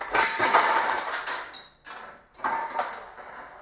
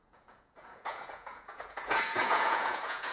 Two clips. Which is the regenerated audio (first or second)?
second